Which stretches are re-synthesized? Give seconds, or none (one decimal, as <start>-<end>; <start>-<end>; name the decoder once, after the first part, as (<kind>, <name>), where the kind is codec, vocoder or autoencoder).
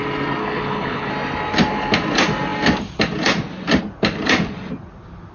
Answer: 0.4-1.1 (codec, HILCodec)